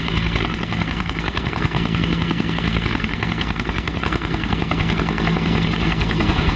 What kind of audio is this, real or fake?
fake